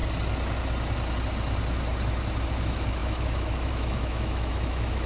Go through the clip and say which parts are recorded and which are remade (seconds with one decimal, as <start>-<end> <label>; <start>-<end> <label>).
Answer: 0.0-2.6 recorded; 2.6-5.1 remade